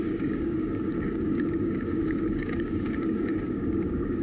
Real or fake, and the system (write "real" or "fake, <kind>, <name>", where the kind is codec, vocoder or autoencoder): fake, codec, DAC